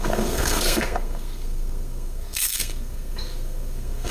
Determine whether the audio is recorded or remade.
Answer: remade